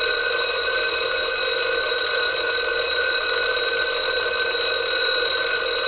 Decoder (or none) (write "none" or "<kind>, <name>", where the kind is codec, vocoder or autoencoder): none